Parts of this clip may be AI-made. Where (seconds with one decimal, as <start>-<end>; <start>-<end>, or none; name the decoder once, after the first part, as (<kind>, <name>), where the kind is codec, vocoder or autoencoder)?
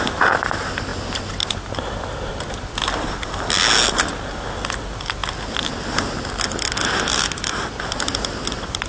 none